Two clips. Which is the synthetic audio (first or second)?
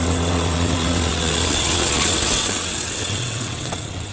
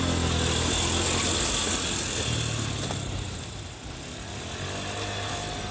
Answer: first